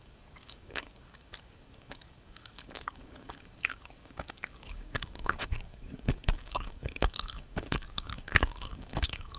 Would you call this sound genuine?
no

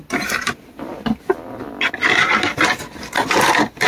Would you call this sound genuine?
yes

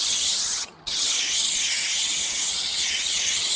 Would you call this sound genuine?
no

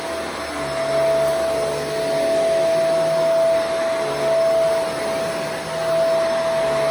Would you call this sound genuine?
yes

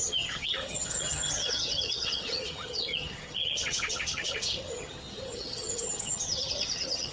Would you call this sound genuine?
no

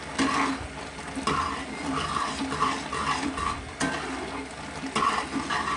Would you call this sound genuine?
yes